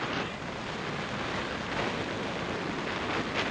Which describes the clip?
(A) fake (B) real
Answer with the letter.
B